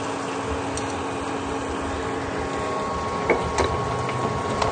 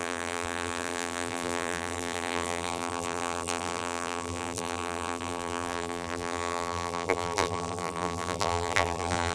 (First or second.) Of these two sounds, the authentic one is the first